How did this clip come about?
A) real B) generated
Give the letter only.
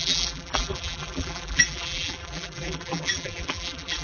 B